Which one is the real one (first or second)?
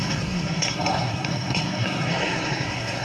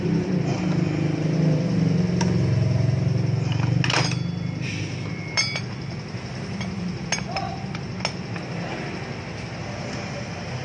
second